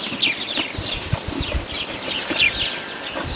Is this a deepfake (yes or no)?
no